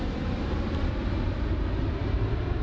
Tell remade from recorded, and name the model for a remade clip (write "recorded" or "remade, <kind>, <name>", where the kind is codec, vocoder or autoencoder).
recorded